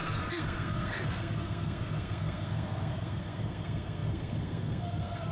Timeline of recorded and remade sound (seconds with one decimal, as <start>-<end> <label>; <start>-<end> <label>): 0.0-5.3 remade